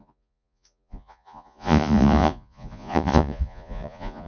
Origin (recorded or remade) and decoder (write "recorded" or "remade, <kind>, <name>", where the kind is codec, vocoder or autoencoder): remade, vocoder, Vocos